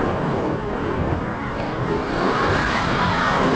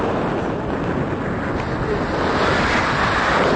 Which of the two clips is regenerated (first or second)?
first